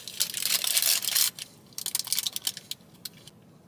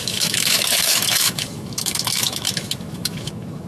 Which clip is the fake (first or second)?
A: second